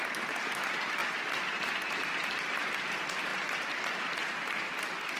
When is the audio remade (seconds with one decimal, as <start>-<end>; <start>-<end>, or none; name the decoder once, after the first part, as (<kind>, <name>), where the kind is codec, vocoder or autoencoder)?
none